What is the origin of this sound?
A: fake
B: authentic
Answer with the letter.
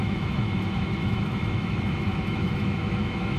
A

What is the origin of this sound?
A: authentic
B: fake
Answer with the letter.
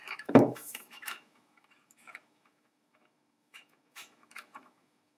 B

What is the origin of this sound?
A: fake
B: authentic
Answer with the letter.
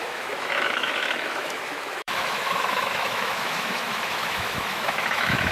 A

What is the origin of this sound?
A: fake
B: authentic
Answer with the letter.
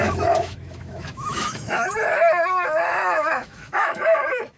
A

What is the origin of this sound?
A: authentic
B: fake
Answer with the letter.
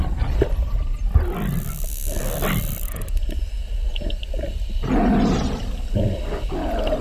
A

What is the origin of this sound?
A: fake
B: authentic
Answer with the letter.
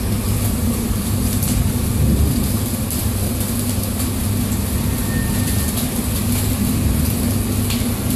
B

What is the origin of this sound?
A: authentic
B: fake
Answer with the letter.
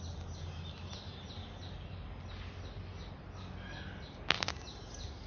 A